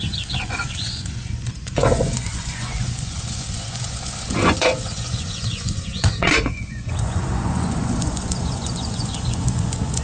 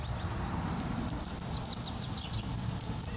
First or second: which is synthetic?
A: first